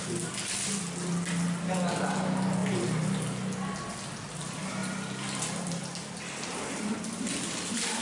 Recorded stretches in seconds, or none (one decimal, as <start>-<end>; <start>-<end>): 0.0-4.8; 5.8-8.0